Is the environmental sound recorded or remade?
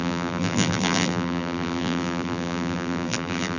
remade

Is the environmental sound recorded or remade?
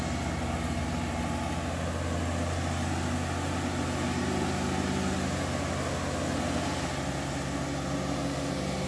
recorded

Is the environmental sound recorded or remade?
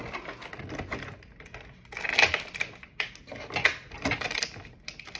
recorded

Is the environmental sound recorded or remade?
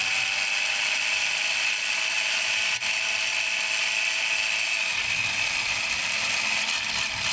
recorded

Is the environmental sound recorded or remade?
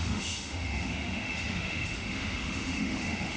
remade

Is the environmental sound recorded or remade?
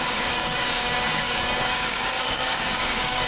remade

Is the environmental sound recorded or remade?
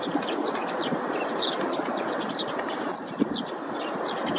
recorded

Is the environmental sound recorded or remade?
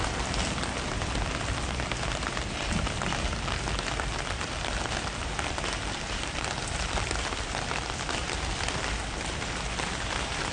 recorded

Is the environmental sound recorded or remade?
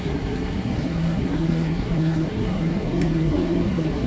remade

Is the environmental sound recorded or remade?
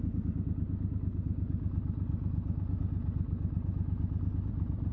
recorded